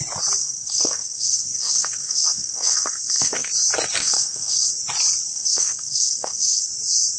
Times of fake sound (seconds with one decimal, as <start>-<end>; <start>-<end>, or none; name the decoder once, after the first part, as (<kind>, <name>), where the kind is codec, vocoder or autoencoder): 0.4-3.5 (codec, SNAC); 4.0-4.7; 5.3-6.7